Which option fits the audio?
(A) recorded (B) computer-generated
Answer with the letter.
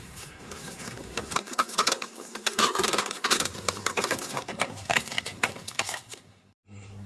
B